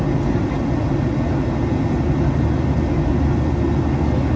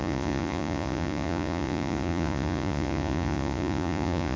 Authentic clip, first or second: first